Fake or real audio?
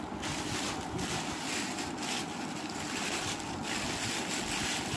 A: real